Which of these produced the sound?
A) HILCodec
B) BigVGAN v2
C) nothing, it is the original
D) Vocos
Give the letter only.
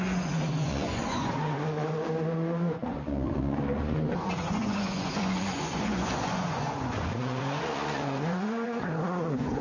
D